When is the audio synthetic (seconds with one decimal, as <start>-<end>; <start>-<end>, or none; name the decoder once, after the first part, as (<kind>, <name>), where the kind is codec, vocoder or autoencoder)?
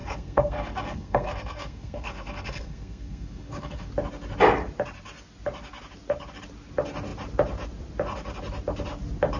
0.0-3.9 (codec, SNAC)